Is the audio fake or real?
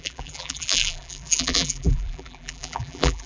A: fake